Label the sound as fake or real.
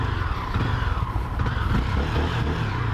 real